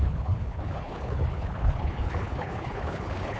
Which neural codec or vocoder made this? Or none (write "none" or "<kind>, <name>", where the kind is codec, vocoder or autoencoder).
codec, HILCodec